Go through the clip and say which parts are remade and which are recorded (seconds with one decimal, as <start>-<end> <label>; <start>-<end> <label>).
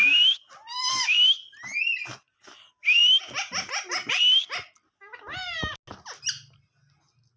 0.0-7.4 recorded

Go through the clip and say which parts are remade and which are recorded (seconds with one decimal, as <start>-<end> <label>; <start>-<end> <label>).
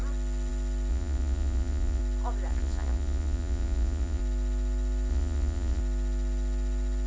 0.0-0.9 recorded; 0.9-2.0 remade; 2.0-2.5 recorded; 2.5-4.2 remade; 4.2-5.1 recorded; 5.1-5.8 remade; 5.8-7.1 recorded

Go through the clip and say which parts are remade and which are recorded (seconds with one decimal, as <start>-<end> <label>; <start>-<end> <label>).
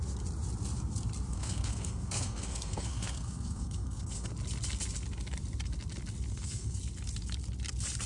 0.0-1.3 recorded; 1.3-4.3 remade; 4.3-6.3 recorded; 6.3-6.8 remade; 6.8-8.1 recorded